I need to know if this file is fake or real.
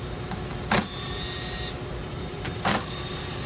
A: real